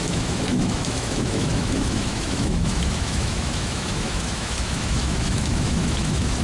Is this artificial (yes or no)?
yes